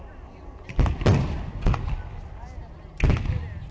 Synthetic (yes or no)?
no